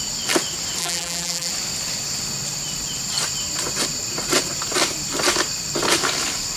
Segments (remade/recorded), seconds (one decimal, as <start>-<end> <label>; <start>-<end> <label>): 0.0-0.8 recorded; 0.8-1.5 remade; 1.5-6.6 recorded